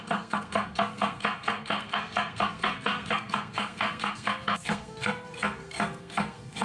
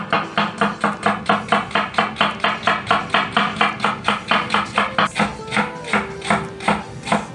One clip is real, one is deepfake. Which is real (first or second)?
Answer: second